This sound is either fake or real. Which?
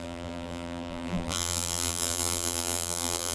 fake